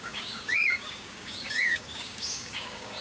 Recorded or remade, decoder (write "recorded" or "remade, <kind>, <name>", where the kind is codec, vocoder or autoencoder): remade, codec, DAC